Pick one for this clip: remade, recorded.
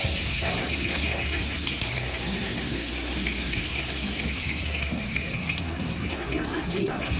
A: remade